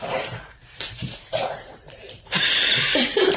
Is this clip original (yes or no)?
no